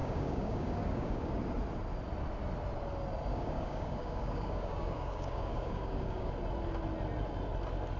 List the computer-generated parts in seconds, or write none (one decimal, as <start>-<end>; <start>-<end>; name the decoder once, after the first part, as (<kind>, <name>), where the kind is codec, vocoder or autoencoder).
0.0-1.3 (codec, DAC); 3.3-6.3